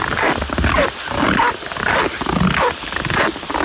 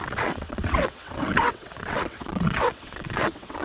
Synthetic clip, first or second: second